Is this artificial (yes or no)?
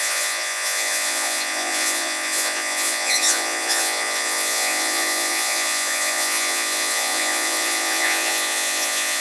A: yes